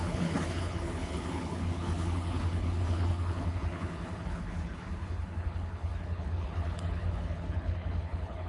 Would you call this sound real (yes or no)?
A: no